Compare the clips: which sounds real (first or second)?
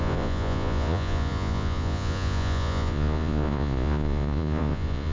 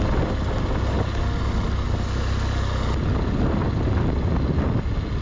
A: second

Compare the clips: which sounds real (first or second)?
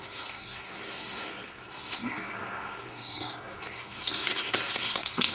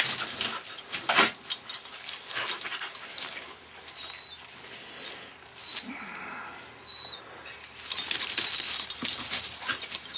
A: second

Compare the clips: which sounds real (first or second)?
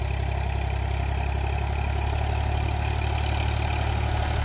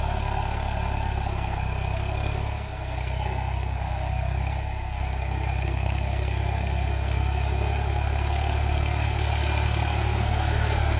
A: first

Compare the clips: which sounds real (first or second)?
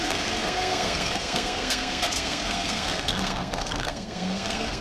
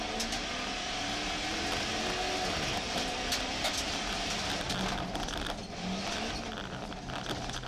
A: second